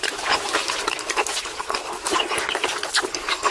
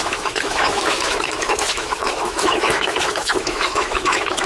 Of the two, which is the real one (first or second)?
first